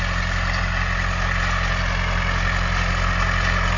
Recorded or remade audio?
recorded